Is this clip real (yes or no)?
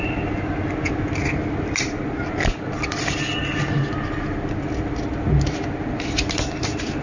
yes